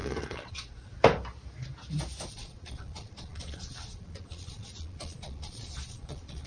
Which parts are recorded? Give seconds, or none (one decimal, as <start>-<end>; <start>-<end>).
0.9-2.3